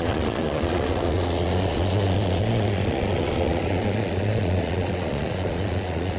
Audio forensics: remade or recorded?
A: remade